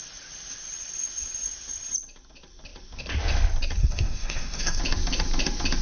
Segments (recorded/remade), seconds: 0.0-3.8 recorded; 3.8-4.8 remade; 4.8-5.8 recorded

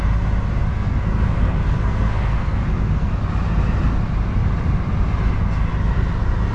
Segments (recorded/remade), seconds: 0.0-0.7 recorded; 0.7-3.1 remade; 3.1-6.5 recorded

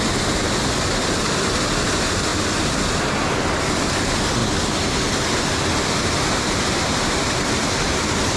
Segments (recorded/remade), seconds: 0.0-8.4 recorded

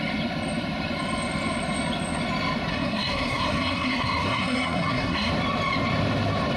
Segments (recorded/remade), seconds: 0.0-2.7 recorded; 2.7-5.3 remade; 5.3-6.6 recorded